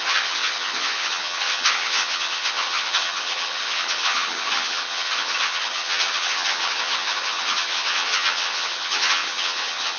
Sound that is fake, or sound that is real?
fake